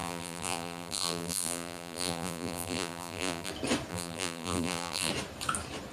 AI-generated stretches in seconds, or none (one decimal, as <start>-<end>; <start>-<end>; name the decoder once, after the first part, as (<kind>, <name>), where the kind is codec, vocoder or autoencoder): 0.0-3.5 (vocoder, BigVGAN v2); 3.9-5.1